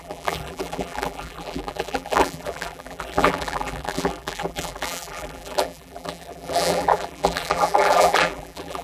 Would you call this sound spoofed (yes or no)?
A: yes